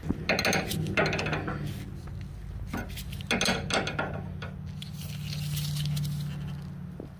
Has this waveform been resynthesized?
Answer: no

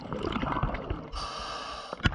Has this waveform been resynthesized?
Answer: no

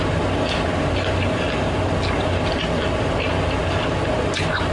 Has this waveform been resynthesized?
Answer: no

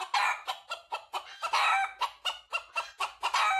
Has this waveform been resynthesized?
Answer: no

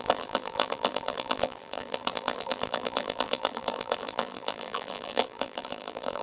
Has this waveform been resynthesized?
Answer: yes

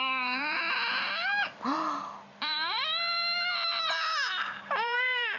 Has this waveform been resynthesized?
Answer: yes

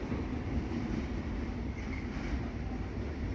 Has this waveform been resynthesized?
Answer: yes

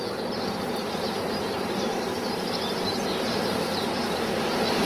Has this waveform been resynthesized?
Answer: yes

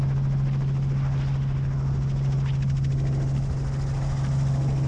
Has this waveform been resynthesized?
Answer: no